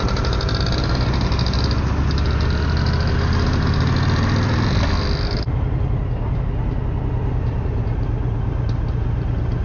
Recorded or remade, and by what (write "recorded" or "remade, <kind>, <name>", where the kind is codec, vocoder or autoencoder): recorded